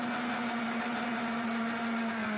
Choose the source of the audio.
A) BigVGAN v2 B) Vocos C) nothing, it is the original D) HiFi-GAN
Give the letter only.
C